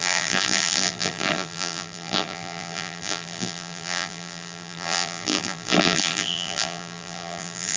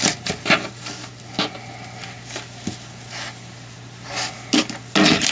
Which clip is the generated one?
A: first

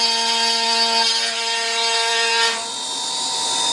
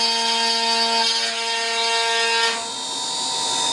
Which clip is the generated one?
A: first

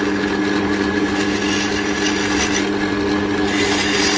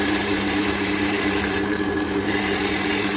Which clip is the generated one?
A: second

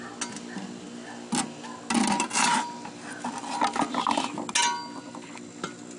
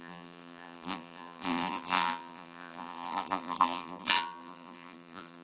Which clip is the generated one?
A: second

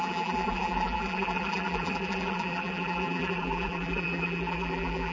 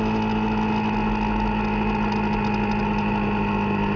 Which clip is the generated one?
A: first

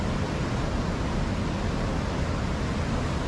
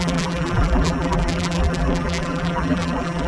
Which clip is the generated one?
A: second